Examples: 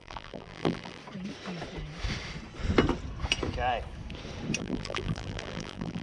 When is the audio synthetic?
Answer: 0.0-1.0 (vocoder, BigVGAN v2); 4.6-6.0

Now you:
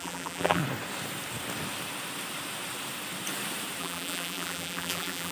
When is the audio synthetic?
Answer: 0.0-0.6 (vocoder, BigVGAN v2); 3.8-5.3

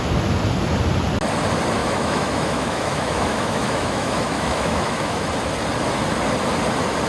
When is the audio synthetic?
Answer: 1.8-5.3 (autoencoder, DAC-VAE)

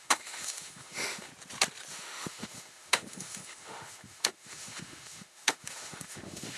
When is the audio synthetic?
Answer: 0.0-1.3 (autoencoder, DAC-VAE); 1.9-6.6

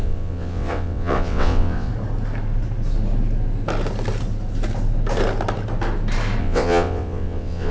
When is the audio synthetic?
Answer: 0.0-1.9 (vocoder, WaveNeXt); 6.4-7.7